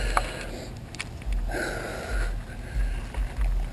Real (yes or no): yes